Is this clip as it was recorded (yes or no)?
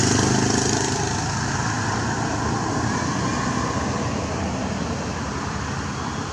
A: yes